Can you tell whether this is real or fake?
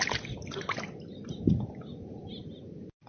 real